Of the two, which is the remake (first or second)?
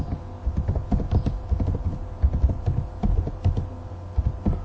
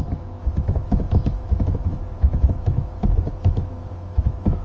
second